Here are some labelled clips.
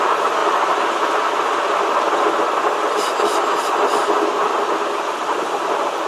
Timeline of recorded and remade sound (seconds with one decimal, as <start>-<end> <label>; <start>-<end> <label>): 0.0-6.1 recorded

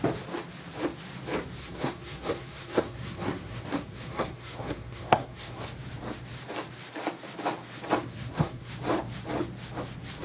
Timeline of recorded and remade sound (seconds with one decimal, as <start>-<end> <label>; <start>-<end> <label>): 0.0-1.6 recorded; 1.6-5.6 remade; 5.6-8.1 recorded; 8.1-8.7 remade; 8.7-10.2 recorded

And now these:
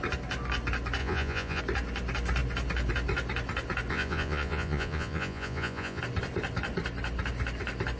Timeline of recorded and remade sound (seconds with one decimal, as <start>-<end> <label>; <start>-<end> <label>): 0.0-1.0 recorded; 1.0-1.6 remade; 1.6-3.9 recorded; 3.9-6.0 remade; 6.0-8.0 recorded